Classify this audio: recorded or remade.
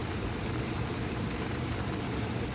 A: remade